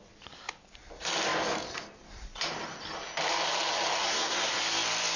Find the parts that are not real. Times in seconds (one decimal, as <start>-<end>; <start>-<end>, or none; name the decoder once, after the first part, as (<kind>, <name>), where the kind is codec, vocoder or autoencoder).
4.0-4.6 (codec, SNAC)